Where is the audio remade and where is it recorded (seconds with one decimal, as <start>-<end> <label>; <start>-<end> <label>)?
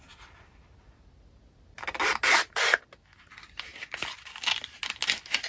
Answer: 0.0-5.5 recorded